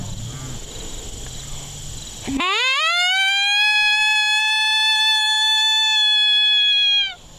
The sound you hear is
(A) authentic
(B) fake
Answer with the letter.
A